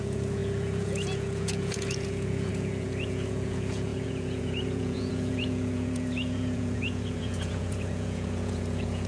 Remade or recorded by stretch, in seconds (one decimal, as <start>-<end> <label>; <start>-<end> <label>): 0.0-9.1 remade